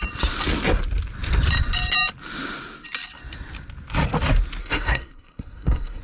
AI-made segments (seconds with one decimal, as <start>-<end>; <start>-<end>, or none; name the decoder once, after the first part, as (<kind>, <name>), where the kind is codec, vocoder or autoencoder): 4.6-6.0 (codec, SNAC)